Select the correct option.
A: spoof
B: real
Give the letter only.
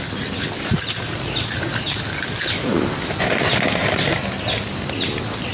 B